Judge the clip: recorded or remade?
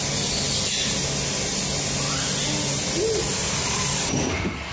recorded